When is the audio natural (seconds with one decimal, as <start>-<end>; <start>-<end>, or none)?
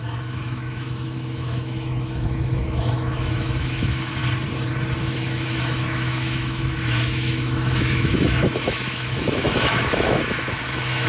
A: 4.2-5.0